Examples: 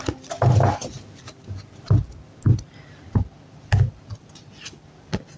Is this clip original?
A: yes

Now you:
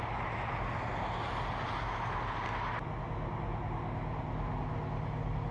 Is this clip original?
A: yes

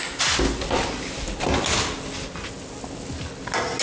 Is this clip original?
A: yes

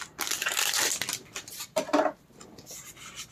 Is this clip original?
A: yes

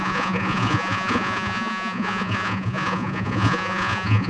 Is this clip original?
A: no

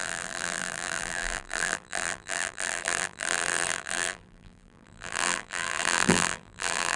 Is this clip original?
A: no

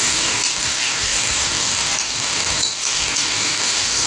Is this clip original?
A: no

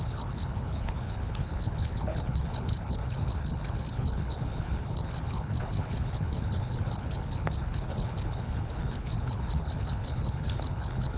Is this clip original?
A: no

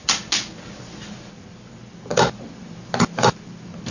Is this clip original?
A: yes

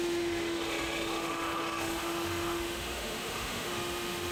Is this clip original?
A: no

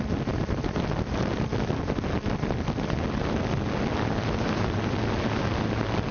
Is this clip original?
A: yes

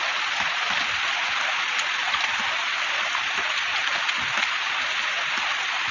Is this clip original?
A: yes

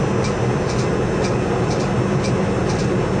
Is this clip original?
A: yes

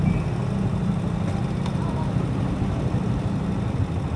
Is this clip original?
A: yes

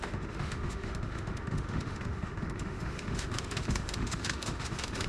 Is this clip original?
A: no